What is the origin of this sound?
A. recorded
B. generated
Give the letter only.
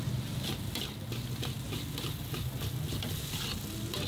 A